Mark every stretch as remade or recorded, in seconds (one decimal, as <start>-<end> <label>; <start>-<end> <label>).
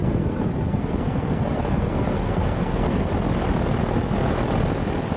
0.0-3.1 remade; 3.1-5.2 recorded